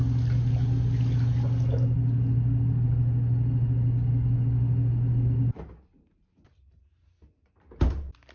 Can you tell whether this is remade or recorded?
recorded